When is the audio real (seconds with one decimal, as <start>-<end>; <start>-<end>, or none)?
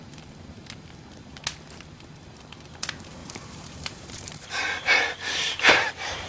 0.0-3.2